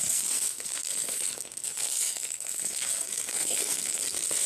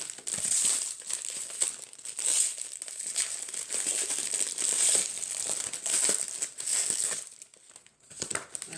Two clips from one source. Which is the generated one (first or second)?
first